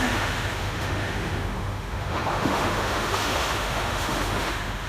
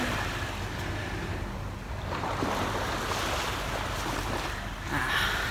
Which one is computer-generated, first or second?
first